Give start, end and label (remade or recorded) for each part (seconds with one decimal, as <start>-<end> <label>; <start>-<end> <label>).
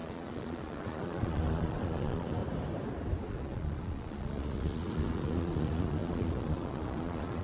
0.0-2.4 remade; 2.4-3.3 recorded; 3.3-7.4 remade